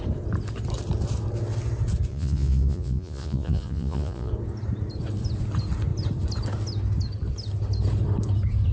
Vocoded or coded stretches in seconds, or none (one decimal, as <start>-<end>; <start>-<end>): 2.1-4.3